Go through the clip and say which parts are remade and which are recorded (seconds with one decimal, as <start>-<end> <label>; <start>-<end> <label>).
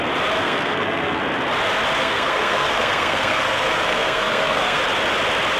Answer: 0.0-0.4 recorded; 0.4-1.2 remade; 1.2-2.0 recorded; 2.0-4.8 remade; 4.8-5.6 recorded